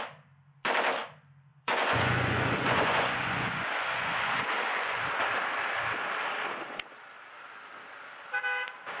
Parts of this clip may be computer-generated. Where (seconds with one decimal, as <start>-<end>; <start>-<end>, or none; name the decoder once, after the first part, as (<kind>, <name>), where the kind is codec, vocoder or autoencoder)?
1.5-5.0 (vocoder, Vocos)